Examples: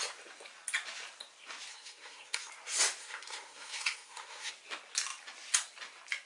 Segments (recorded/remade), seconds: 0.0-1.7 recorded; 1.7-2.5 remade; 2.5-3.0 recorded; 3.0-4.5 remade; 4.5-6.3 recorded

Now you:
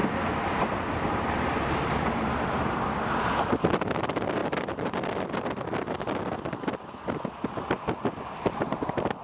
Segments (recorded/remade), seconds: 0.0-9.2 recorded

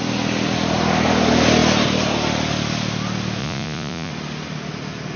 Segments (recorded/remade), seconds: 0.0-3.4 recorded; 3.4-4.1 remade; 4.1-5.2 recorded